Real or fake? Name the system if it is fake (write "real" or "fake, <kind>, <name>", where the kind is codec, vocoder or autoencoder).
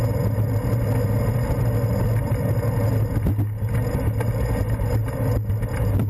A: real